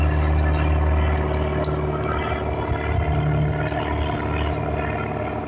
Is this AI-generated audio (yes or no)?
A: no